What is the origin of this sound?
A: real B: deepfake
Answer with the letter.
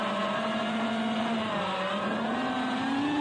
A